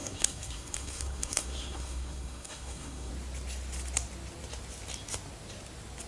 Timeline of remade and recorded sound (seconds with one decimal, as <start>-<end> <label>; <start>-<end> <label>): 0.0-3.1 remade; 3.1-6.1 recorded

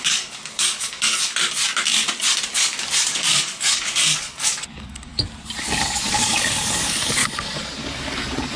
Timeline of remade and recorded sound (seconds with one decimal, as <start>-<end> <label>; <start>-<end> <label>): 0.0-1.4 remade; 1.4-2.5 recorded; 2.5-5.1 remade; 5.1-5.6 recorded; 5.6-7.2 remade; 7.2-7.8 recorded; 7.8-8.6 remade

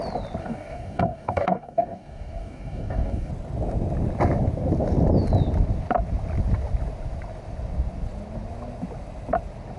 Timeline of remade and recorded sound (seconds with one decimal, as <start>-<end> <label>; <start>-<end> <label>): 0.0-0.4 recorded; 0.4-3.3 remade; 3.3-9.8 recorded

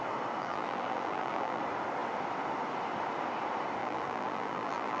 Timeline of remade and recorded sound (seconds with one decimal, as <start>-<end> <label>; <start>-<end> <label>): 0.0-0.4 recorded; 0.4-1.6 remade; 1.6-3.8 recorded; 3.8-5.0 remade

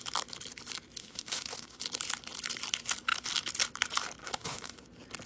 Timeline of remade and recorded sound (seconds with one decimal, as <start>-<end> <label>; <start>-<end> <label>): 0.0-1.0 recorded; 1.0-1.8 remade; 1.8-4.2 recorded; 4.2-4.8 remade; 4.8-5.3 recorded

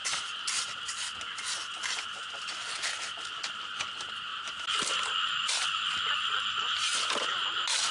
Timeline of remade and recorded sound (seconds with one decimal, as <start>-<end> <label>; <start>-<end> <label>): 0.0-7.9 recorded

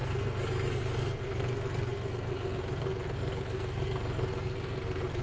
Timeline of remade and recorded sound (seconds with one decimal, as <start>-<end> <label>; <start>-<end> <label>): 0.0-5.2 remade

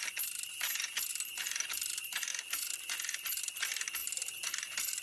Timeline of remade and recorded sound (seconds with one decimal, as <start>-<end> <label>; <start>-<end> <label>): 0.0-5.0 recorded